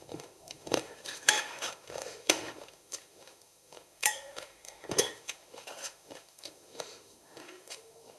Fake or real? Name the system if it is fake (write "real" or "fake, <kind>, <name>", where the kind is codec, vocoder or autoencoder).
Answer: fake, autoencoder, DAC-VAE